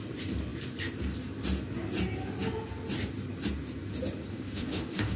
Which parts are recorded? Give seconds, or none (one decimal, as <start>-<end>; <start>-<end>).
0.0-4.3